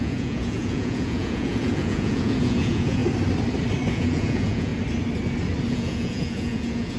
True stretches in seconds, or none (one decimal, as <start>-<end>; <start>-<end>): 3.0-3.9; 4.7-5.7